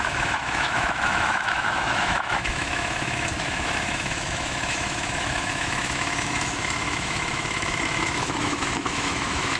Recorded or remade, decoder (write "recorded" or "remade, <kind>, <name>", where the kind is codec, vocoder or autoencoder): remade, autoencoder, DAC-VAE